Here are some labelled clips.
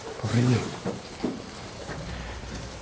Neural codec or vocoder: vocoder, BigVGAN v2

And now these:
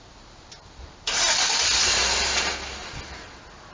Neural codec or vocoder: none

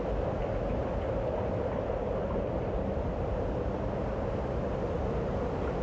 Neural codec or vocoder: none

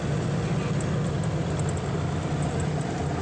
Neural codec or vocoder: none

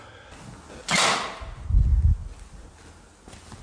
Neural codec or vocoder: none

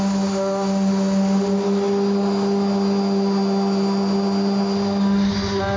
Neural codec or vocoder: none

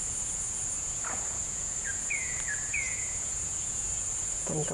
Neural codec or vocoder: vocoder, Vocos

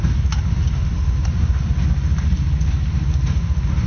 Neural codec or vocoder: none